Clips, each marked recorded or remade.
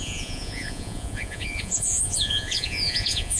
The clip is remade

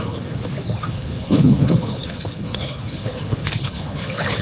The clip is remade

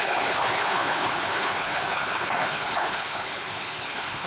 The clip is remade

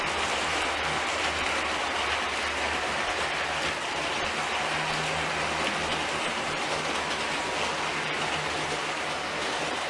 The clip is recorded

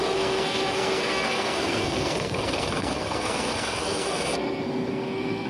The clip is remade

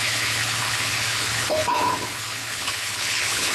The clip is remade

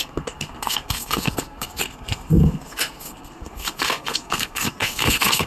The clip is remade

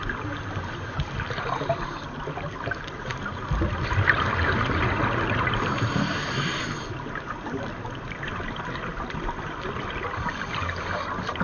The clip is recorded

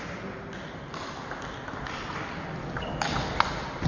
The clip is recorded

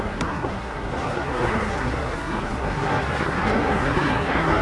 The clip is remade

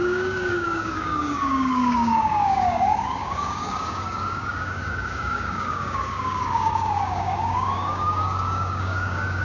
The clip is remade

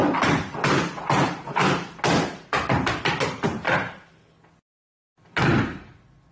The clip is recorded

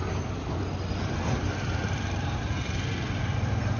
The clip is recorded